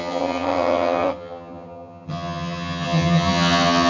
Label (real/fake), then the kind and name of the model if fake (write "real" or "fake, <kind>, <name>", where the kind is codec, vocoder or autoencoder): fake, vocoder, HiFi-GAN